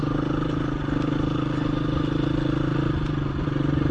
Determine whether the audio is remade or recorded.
recorded